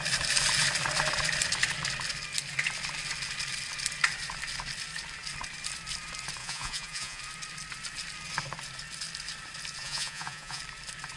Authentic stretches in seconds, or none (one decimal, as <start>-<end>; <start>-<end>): 0.0-6.4; 7.2-9.8; 10.6-11.2